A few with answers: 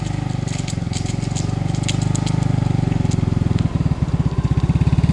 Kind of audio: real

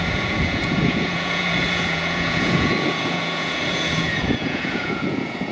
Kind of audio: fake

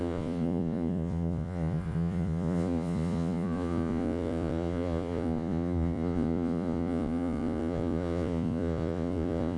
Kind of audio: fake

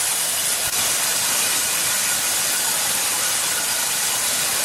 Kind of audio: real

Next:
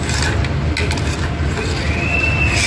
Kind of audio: real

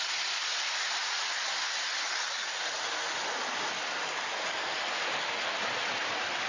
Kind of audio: real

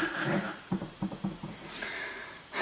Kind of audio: fake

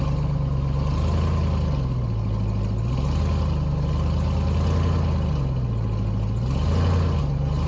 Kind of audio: real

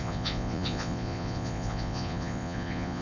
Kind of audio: fake